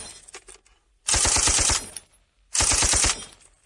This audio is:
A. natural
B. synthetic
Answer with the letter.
A